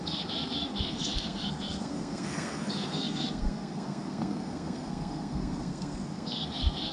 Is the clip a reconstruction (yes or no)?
yes